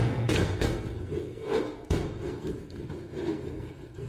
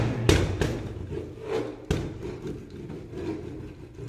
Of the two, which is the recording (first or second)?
second